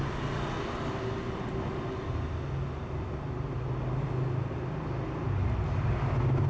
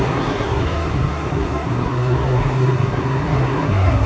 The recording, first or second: first